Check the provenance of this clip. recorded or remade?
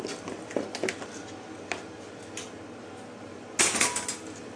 recorded